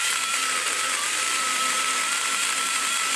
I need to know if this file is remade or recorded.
remade